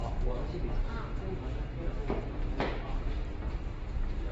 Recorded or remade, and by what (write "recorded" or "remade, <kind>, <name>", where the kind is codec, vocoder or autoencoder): recorded